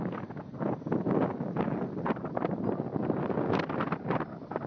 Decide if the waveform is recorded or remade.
recorded